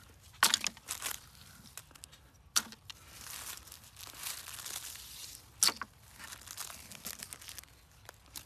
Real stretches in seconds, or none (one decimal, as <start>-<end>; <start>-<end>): 0.0-8.5